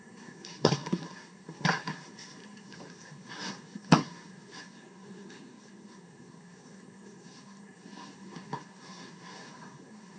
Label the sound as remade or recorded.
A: remade